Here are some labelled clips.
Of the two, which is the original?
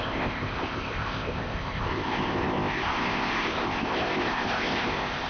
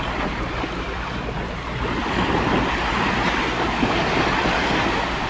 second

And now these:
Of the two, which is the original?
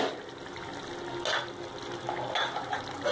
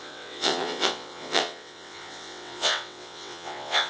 first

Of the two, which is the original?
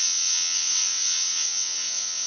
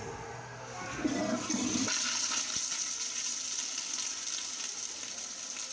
second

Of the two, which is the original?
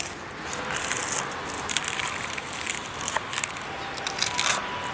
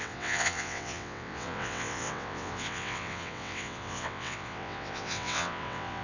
first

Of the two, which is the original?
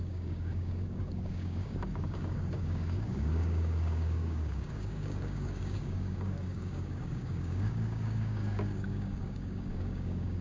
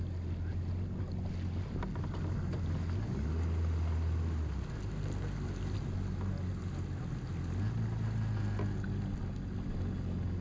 second